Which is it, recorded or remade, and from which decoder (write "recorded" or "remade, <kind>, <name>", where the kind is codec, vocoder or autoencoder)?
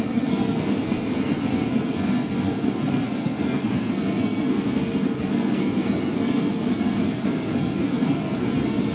remade, codec, SNAC